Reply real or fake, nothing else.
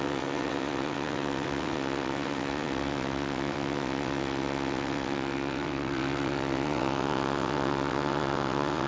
fake